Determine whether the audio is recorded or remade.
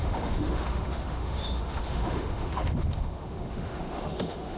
remade